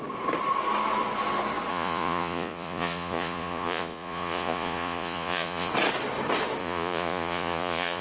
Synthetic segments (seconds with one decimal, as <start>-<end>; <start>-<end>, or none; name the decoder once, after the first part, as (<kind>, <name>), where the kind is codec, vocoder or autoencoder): 1.7-5.7 (vocoder, Vocos); 6.6-8.0